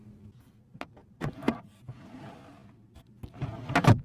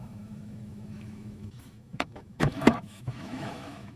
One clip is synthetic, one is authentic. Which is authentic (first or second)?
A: first